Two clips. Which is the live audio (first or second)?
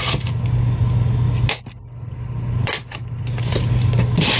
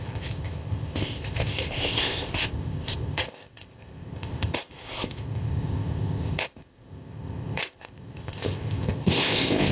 first